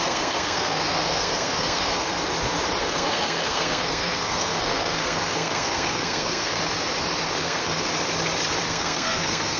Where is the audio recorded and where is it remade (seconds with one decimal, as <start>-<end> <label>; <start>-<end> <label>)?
0.0-2.1 remade; 2.1-2.8 recorded; 2.8-6.6 remade; 6.6-7.4 recorded; 7.4-7.9 remade; 7.9-8.7 recorded; 8.7-9.6 remade